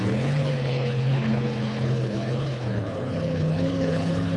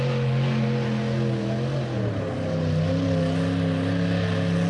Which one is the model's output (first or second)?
first